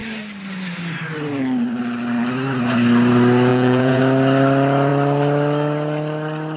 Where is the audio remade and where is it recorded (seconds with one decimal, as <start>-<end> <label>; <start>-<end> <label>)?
0.0-3.5 recorded; 3.5-4.0 remade; 4.0-6.6 recorded